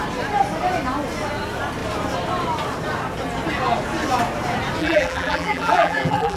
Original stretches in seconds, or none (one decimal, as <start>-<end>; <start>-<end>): 0.0-4.8

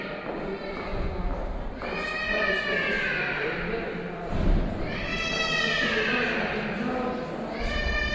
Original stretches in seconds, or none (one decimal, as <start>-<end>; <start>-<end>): 0.9-3.2; 5.1-7.6

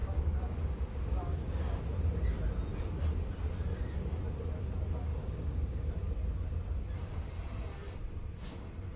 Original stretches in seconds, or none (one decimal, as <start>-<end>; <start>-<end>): 1.7-5.1; 5.8-9.0